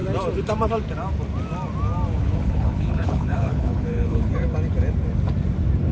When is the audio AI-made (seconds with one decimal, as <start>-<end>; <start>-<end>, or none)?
2.2-4.3